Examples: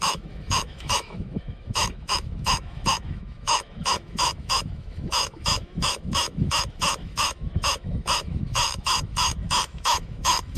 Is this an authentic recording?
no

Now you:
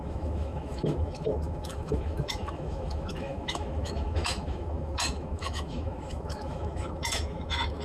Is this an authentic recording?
no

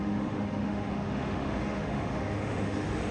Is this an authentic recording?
no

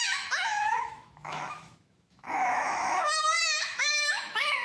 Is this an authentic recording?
no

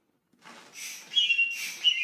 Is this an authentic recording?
yes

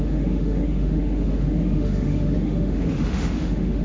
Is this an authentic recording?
no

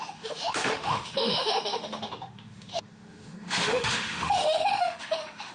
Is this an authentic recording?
no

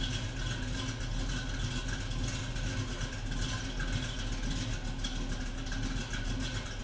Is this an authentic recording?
yes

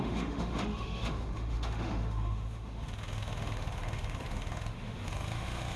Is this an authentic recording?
no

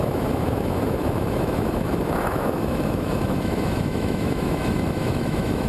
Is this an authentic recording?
no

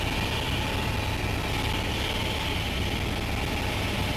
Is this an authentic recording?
yes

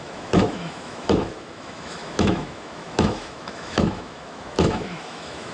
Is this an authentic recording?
no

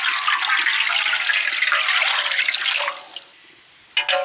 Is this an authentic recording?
yes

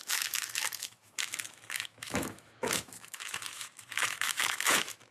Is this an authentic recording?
no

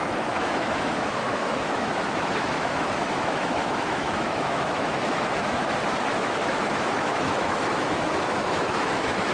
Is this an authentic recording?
no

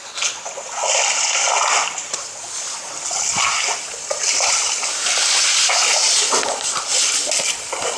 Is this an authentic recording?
yes